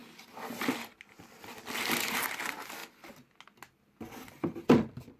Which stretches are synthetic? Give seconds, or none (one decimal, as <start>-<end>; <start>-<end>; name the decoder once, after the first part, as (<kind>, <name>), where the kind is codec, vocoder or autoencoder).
0.8-2.8 (vocoder, BigVGAN v2); 4.5-5.2